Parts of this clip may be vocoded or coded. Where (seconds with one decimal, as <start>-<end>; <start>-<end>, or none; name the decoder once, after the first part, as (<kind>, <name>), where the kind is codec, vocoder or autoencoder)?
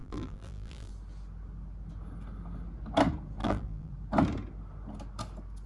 0.0-0.9 (vocoder, BigVGAN v2); 3.4-3.9